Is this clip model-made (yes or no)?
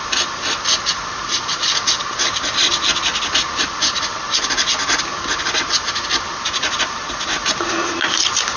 no